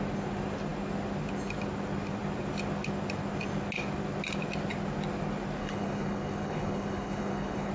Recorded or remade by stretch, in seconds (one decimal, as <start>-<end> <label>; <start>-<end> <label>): 0.0-5.6 recorded; 5.6-7.7 remade